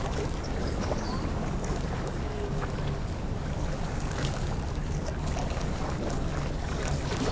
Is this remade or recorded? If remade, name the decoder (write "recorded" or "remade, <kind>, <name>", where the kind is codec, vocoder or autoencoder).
remade, codec, DAC